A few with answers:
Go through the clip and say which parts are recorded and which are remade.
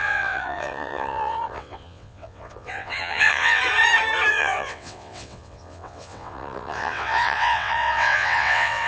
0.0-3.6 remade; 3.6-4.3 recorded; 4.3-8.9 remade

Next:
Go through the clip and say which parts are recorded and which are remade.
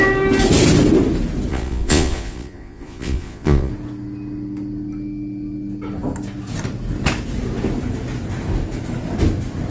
0.0-1.5 recorded; 1.5-3.7 remade; 3.7-9.7 recorded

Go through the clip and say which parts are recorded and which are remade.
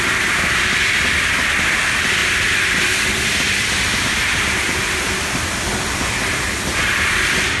0.0-7.6 remade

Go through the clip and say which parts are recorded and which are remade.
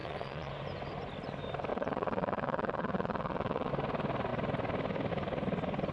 0.0-0.5 remade; 0.5-1.7 recorded; 1.7-3.7 remade; 3.7-5.9 recorded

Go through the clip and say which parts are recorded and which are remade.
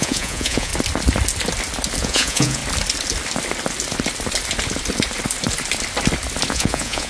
0.0-0.7 remade; 0.7-2.0 recorded; 2.0-2.6 remade; 2.6-6.5 recorded; 6.5-7.1 remade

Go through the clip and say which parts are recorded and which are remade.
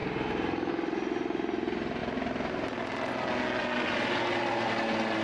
0.0-5.2 recorded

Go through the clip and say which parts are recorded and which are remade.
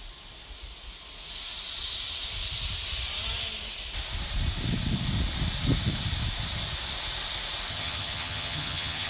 0.0-7.7 recorded; 7.7-9.1 remade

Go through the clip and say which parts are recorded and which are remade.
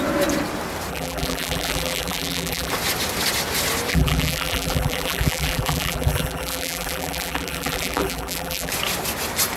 0.0-0.9 recorded; 0.9-2.7 remade; 2.7-3.9 recorded; 3.9-8.7 remade; 8.7-9.6 recorded